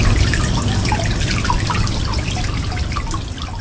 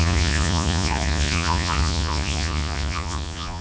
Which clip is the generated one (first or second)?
second